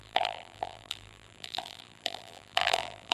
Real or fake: fake